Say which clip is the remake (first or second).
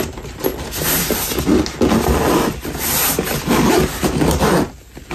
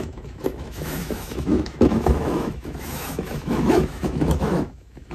second